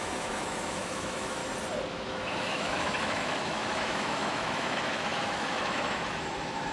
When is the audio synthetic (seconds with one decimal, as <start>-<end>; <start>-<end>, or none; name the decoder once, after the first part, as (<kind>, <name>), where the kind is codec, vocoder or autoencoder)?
0.0-1.4 (autoencoder, DAC-VAE); 1.9-6.7